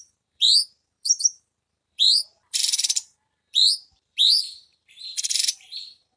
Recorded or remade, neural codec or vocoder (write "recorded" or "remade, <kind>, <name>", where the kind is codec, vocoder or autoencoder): remade, vocoder, BigVGAN v2